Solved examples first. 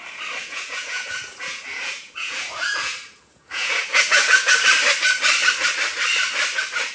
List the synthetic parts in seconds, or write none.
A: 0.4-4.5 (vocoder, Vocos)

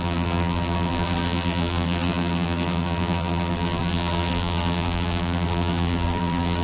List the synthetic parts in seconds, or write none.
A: 0.0-6.6 (vocoder, BigVGAN v2)

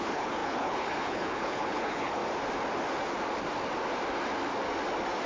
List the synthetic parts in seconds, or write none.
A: 0.0-2.2 (codec, HILCodec)

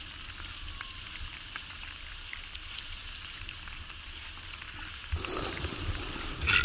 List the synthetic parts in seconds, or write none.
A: none

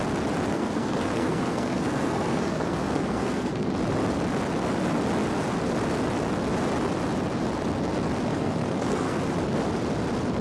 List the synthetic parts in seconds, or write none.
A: 0.5-3.7 (codec, SNAC); 8.3-9.2

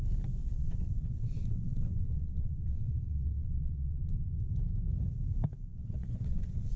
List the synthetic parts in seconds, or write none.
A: 0.4-4.5 (vocoder, WaveNeXt); 5.7-6.8

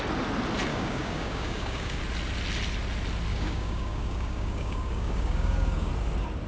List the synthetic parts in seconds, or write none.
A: 0.7-2.0 (codec, DAC); 3.3-5.9